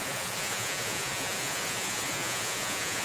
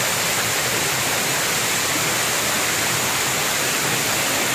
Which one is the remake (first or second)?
first